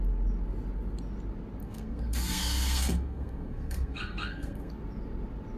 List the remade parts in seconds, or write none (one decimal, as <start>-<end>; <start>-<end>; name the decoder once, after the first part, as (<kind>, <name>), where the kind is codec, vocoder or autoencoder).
1.6-4.7 (codec, SNAC)